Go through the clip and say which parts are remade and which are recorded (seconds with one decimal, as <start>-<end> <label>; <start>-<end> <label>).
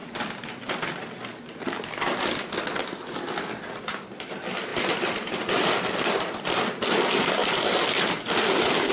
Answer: 0.0-8.9 recorded